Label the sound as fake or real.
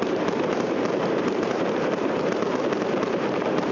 fake